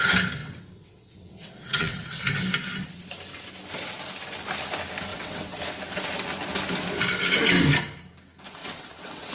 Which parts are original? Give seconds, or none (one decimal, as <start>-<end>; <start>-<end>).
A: 0.0-0.4; 2.2-5.1; 5.6-8.6

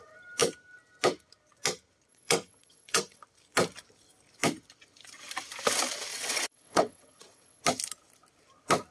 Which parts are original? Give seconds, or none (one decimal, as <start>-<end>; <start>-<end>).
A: 0.0-2.1; 3.2-6.1; 7.6-8.9